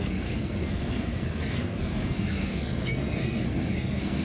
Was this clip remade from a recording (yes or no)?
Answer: yes